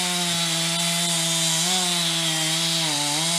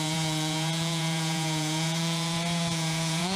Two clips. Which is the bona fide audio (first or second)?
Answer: first